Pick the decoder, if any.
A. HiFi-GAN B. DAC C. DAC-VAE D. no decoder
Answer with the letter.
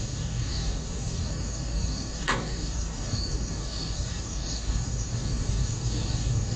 B